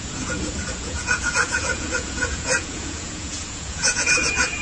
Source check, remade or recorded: remade